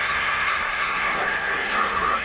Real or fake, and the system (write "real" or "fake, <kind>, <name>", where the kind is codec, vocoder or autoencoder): fake, codec, SNAC